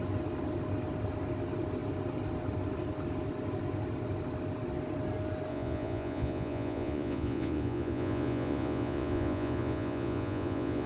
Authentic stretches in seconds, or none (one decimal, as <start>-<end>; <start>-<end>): 0.0-5.5